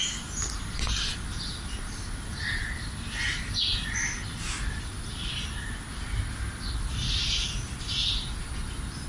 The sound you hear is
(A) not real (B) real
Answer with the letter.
B